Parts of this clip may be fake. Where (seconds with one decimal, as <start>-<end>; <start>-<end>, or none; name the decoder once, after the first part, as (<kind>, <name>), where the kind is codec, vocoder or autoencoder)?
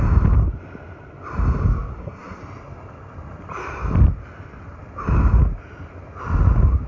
1.9-2.4 (codec, SNAC)